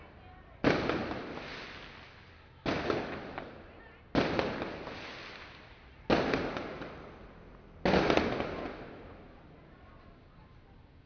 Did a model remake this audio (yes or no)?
no